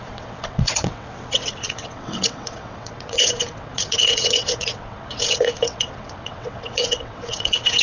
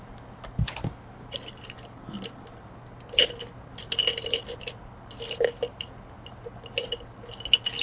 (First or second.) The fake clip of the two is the first